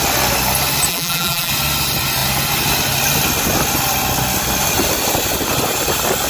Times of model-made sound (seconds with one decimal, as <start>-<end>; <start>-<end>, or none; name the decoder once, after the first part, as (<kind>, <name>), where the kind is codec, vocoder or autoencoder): 0.9-1.5 (vocoder, BigVGAN v2)